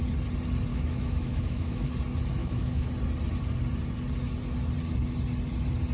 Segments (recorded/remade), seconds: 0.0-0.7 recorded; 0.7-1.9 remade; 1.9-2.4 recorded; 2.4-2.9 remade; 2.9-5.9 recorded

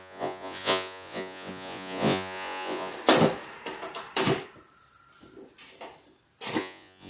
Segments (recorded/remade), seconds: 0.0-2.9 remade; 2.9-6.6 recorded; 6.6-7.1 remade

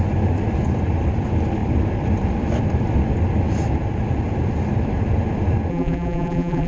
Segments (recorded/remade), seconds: 0.0-5.7 recorded; 5.7-6.7 remade

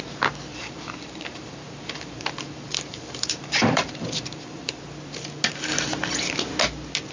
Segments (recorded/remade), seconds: 0.0-0.5 recorded; 0.5-4.8 remade; 4.8-7.1 recorded

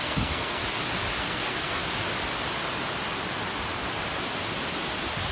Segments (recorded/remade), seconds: 0.0-0.6 remade; 0.6-1.2 recorded; 1.2-1.8 remade; 1.8-5.3 recorded

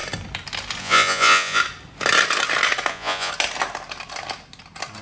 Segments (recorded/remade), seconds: 0.0-0.8 recorded; 0.8-1.6 remade; 1.6-2.9 recorded; 2.9-3.3 remade; 3.3-5.0 recorded

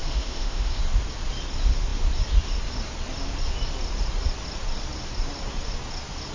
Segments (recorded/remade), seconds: 0.0-0.8 remade; 0.8-6.3 recorded

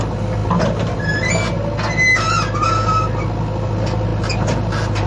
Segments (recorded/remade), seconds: 0.0-5.1 recorded